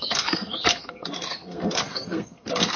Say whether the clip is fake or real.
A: fake